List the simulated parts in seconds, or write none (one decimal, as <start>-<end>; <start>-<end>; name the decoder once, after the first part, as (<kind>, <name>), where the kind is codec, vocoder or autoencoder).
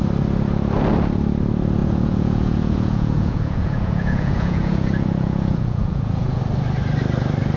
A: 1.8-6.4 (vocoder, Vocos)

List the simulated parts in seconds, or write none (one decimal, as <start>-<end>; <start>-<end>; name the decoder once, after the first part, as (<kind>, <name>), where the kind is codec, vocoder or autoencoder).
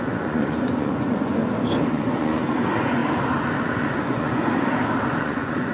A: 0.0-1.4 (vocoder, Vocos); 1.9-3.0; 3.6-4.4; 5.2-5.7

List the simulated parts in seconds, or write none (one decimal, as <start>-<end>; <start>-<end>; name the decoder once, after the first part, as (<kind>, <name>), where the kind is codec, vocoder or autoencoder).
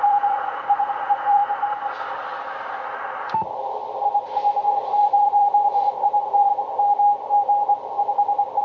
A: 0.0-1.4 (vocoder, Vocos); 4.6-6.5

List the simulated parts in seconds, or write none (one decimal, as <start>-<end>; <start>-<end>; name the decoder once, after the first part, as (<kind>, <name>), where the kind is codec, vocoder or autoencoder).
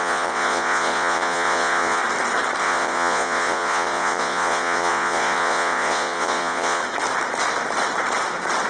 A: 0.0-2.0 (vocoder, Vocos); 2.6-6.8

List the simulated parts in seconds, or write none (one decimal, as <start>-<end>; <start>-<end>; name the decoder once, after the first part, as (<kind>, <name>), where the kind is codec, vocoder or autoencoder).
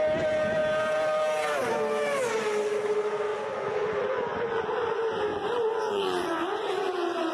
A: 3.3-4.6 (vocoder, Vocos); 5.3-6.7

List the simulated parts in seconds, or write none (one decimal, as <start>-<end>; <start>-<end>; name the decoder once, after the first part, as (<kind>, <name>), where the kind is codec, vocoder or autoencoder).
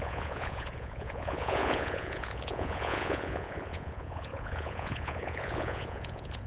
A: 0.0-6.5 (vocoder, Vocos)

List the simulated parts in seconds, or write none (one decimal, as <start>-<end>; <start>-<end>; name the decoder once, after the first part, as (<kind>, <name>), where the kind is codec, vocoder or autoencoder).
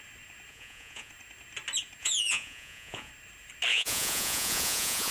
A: 0.5-1.1 (vocoder, Vocos); 2.0-3.1; 3.7-5.1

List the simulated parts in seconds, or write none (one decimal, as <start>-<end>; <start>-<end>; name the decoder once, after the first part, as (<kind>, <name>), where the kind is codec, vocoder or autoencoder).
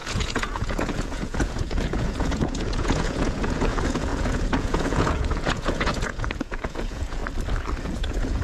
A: 0.0-7.2 (vocoder, Vocos); 7.8-8.4